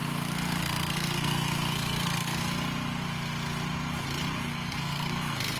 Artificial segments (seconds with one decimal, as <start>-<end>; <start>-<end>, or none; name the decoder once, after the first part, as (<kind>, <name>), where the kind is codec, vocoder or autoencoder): 0.0-2.4 (codec, SNAC); 4.5-5.6